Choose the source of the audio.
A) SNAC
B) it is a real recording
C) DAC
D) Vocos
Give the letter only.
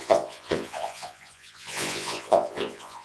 D